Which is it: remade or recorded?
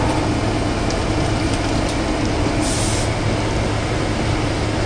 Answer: recorded